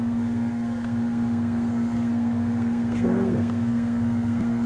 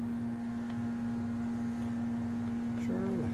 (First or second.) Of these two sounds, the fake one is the first